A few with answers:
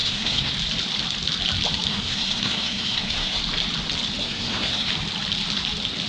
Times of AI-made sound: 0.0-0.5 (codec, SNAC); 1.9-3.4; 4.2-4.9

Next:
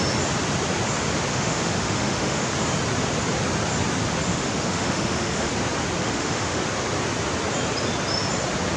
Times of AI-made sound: 1.3-2.5 (autoencoder, DAC-VAE); 4.3-5.5; 6.0-6.6

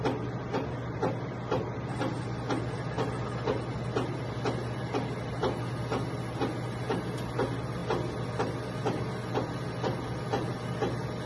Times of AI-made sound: none

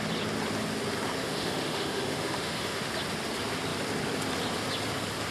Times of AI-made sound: 1.2-2.9 (autoencoder, DAC-VAE)

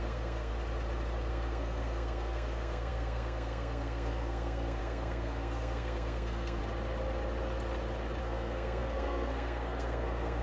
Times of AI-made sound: 0.0-0.5 (codec, SNAC); 1.3-6.6; 8.2-10.4

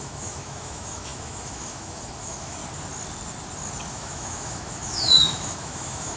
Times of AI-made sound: 0.0-2.6 (autoencoder, DAC-VAE); 3.9-6.2